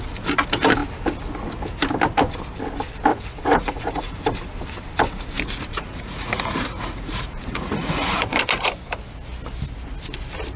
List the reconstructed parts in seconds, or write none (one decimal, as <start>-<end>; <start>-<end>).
3.1-4.2; 5.7-8.4